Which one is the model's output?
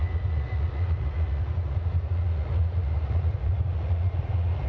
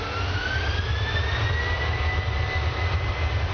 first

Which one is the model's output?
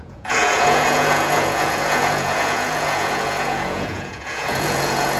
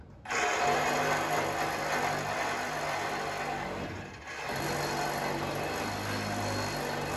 first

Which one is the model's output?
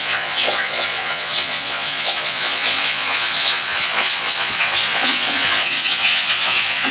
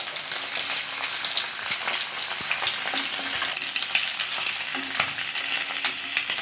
first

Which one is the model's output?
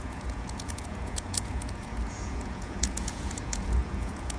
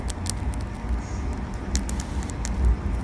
first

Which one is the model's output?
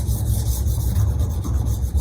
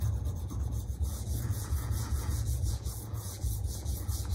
second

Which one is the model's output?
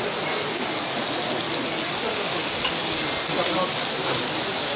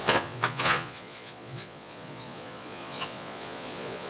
second